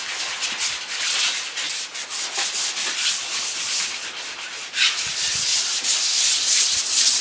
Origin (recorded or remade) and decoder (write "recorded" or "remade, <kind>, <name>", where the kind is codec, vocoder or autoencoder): recorded